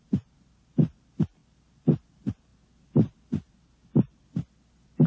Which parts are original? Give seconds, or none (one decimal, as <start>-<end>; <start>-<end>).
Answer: 0.0-5.1